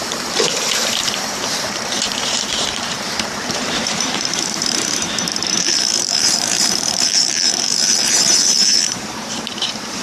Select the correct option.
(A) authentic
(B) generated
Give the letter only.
B